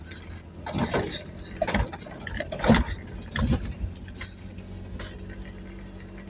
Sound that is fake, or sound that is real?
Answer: real